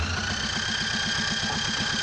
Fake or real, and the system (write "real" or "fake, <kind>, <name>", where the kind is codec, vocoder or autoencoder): real